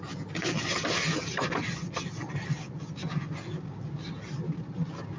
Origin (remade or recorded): recorded